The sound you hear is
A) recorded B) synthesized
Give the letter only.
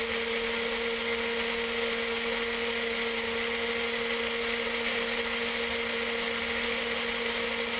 A